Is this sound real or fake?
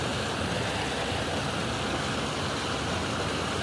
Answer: real